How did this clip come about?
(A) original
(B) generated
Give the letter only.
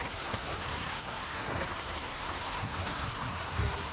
B